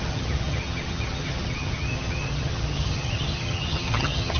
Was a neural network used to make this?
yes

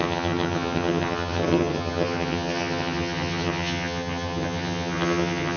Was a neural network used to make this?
yes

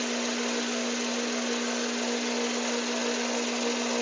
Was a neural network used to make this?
no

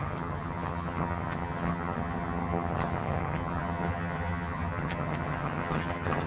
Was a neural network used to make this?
yes